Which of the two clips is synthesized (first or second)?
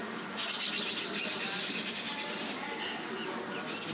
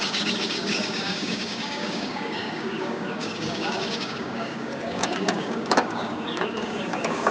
second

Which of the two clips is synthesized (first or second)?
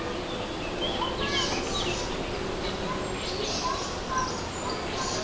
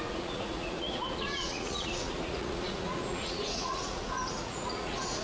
second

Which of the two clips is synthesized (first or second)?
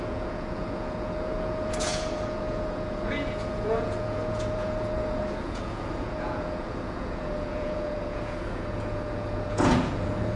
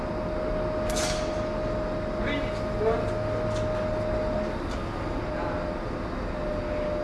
first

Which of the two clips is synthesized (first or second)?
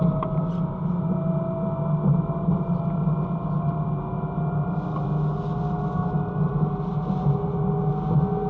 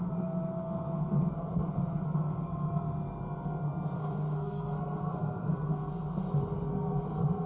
second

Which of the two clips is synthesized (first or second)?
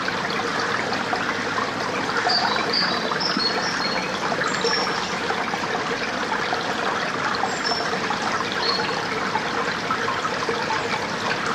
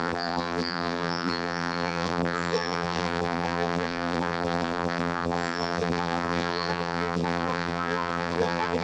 second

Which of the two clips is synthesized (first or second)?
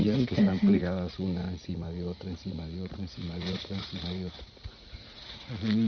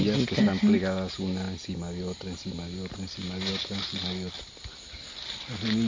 first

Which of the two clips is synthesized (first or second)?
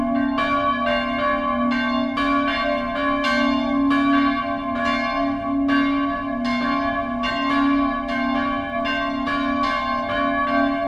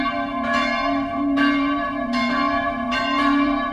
second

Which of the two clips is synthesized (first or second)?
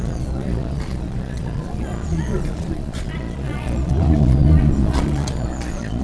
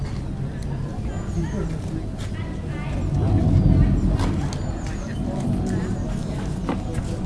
first